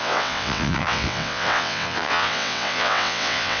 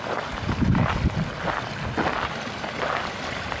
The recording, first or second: second